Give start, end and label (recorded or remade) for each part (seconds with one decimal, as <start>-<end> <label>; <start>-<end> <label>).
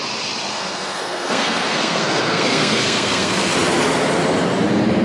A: 0.0-0.5 recorded; 0.5-3.5 remade; 3.5-5.0 recorded